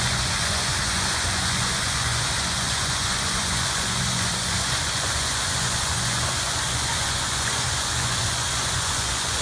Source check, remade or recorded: remade